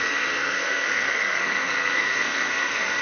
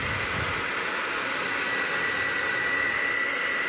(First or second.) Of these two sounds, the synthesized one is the first